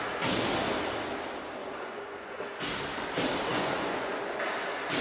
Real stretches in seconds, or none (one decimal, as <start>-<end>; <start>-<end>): 0.0-1.6; 2.4-3.5; 4.1-5.0